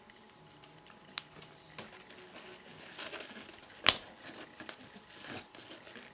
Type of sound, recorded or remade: recorded